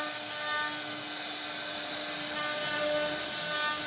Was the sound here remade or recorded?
recorded